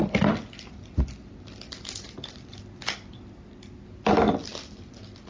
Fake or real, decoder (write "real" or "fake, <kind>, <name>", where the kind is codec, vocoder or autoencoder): real